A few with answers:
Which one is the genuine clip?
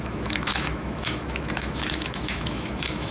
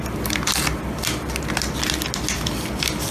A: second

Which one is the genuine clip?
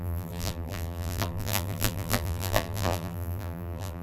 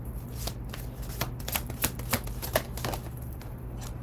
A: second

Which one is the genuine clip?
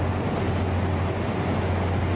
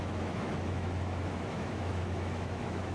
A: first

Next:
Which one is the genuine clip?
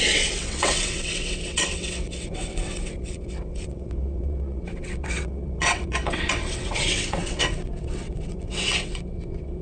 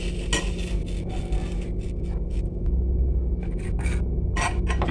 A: second